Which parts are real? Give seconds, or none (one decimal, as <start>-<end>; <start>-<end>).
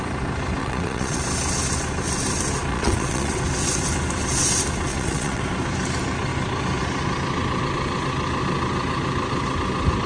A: 0.0-0.6; 1.2-2.7; 3.4-4.9; 5.4-10.1